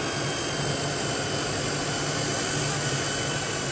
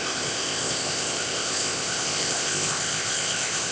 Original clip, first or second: first